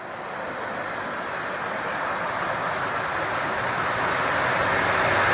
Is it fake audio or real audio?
real